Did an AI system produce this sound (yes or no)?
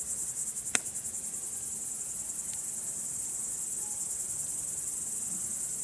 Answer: no